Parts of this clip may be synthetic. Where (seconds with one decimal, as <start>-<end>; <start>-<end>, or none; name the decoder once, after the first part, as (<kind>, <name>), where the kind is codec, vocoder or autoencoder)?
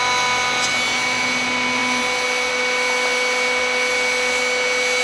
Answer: none